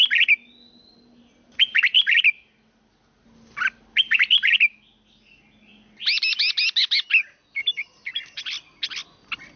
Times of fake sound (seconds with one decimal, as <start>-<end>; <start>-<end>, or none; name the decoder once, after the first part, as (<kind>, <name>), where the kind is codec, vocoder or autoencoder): none

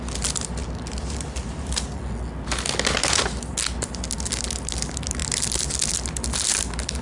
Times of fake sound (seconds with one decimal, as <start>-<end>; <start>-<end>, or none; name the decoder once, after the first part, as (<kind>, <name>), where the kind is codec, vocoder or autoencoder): none

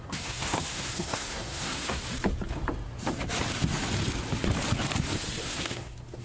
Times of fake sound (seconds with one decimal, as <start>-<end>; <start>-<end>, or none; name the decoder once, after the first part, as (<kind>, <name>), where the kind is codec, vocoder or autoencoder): 0.0-2.0 (codec, SNAC); 5.4-6.2

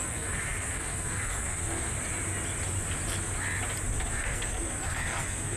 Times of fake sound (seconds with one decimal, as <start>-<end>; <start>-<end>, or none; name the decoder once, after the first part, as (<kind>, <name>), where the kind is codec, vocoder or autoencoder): 0.0-1.9 (codec, SNAC); 4.1-5.6

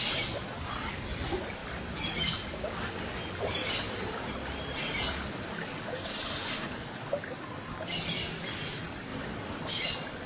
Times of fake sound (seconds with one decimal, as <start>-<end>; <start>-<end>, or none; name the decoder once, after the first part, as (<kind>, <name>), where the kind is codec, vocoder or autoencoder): none

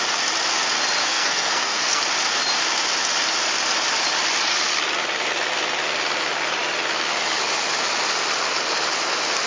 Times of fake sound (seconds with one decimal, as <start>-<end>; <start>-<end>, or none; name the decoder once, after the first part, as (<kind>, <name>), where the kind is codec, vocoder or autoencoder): 1.0-2.0 (codec, SNAC)

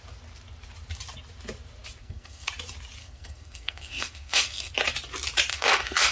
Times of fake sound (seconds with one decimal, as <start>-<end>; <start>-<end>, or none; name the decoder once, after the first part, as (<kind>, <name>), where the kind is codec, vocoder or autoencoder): 2.0-2.5 (codec, SNAC); 3.0-4.7; 5.5-6.1

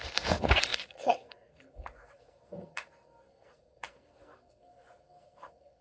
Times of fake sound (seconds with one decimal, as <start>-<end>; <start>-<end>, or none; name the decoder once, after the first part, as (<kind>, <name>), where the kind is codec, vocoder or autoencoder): 0.0-5.8 (codec, SNAC)